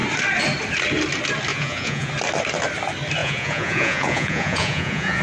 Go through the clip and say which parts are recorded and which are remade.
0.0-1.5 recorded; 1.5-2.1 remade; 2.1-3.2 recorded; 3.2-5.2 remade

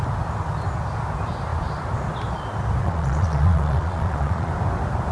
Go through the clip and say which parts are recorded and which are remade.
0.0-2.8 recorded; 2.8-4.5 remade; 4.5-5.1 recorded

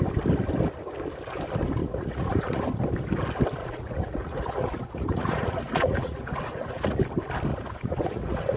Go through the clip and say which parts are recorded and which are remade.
0.0-1.8 recorded; 1.8-2.6 remade; 2.6-3.6 recorded; 3.6-7.0 remade; 7.0-7.5 recorded; 7.5-8.6 remade